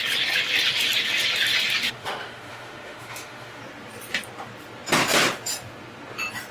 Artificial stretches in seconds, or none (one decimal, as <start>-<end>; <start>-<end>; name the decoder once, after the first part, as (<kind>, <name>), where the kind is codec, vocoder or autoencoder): 1.8-3.6 (autoencoder, DAC-VAE)